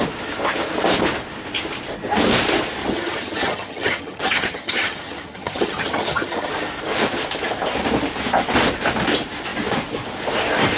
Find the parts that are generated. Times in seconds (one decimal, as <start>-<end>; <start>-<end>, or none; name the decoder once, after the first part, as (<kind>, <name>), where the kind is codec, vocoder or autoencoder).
2.8-6.5 (vocoder, HiFi-GAN)